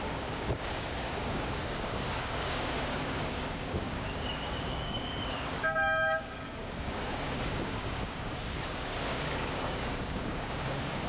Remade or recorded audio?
remade